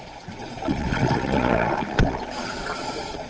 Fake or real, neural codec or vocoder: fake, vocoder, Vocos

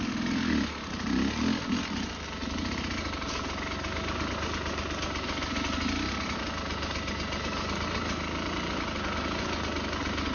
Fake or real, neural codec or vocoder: real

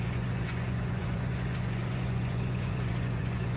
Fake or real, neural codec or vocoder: fake, vocoder, Vocos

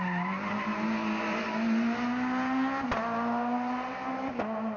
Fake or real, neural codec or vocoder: real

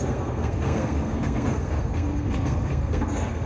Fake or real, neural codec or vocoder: fake, codec, SNAC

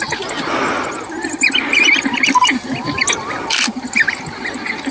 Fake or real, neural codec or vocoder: real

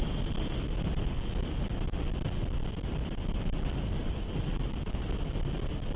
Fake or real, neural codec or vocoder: real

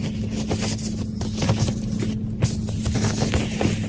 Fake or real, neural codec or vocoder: real